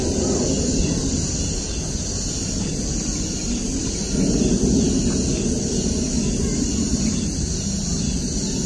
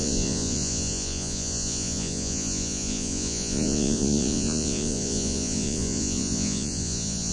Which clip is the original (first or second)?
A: first